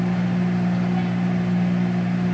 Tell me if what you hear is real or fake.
real